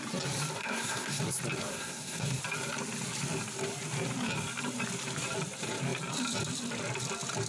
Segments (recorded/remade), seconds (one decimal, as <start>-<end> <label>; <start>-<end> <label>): 0.0-0.6 recorded; 0.6-1.2 remade; 1.2-1.7 recorded; 1.7-2.4 remade; 2.4-7.5 recorded